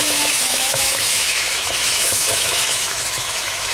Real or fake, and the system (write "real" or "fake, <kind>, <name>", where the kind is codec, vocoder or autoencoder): fake, autoencoder, DAC-VAE